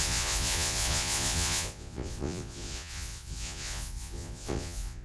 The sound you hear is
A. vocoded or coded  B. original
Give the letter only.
A